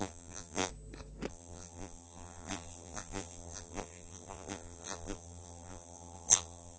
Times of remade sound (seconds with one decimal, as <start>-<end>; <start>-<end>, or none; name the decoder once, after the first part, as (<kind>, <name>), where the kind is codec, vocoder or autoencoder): 0.0-0.7 (vocoder, BigVGAN v2); 1.3-6.8